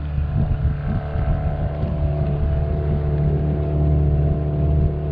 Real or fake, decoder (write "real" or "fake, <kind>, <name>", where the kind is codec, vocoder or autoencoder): real